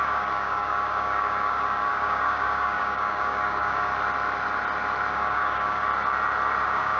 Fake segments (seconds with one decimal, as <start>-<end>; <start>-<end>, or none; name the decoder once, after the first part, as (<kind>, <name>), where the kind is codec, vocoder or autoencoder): 0.0-3.9 (codec, DAC); 5.1-5.9; 6.6-7.0